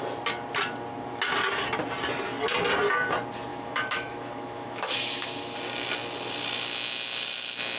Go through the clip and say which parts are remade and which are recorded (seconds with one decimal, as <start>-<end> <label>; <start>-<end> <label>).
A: 0.0-3.5 recorded; 3.5-5.4 remade; 5.4-7.8 recorded